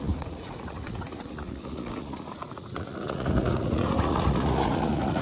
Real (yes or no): no